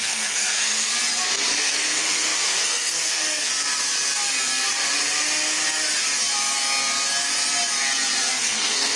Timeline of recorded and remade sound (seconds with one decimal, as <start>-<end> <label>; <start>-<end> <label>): 0.0-0.9 remade; 0.9-1.6 recorded; 1.6-3.5 remade; 3.5-8.3 recorded; 8.3-9.0 remade